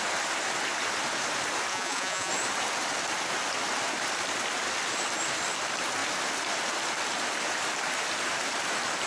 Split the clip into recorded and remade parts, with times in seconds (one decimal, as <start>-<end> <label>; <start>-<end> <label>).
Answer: 0.0-1.7 recorded; 1.7-2.3 remade; 2.3-9.1 recorded